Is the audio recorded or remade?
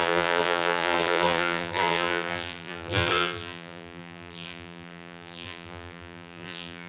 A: remade